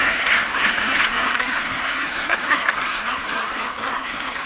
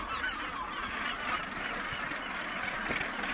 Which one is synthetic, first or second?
first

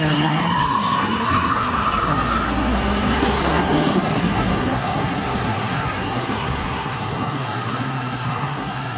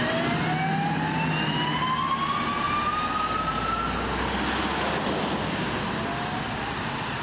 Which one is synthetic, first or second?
first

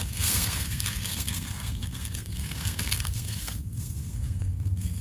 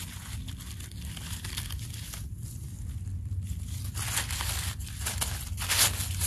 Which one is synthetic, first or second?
first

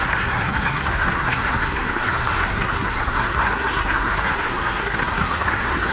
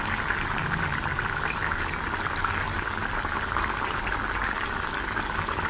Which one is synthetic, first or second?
first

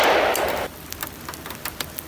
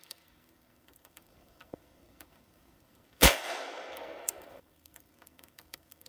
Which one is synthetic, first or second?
second